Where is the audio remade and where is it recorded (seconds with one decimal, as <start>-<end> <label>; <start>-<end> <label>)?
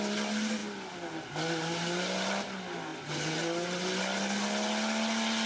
0.0-5.5 recorded